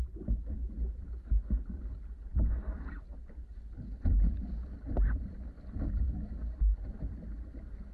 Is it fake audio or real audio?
real